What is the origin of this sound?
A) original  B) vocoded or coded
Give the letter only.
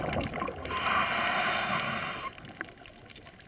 A